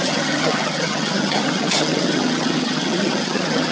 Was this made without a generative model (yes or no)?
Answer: no